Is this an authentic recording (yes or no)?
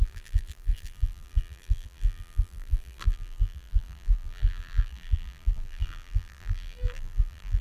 no